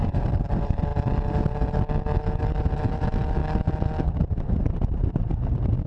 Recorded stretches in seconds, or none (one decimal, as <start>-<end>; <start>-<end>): 0.9-2.3; 3.4-4.1